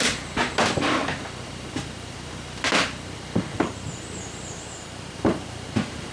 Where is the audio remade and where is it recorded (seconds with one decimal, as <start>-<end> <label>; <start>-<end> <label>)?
0.0-6.1 recorded